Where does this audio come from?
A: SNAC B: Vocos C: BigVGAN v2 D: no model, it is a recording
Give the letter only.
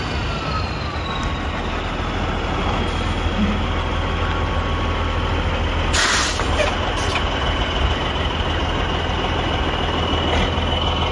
D